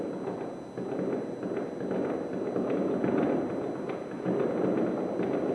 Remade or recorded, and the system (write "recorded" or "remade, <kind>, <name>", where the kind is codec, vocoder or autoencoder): recorded